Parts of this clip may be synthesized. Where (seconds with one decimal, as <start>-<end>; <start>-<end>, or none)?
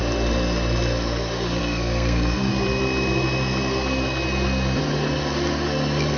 1.6-2.5